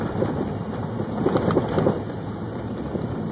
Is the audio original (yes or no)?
yes